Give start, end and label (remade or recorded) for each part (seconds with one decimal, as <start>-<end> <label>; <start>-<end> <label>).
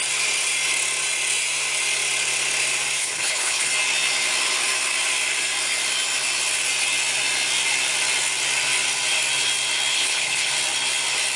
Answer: 0.0-3.0 recorded; 3.0-3.7 remade; 3.7-9.9 recorded; 9.9-10.5 remade; 10.5-11.4 recorded